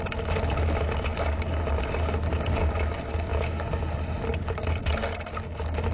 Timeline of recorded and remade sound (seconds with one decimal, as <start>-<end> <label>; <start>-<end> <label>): 0.0-3.3 recorded; 3.3-3.8 remade; 3.8-5.9 recorded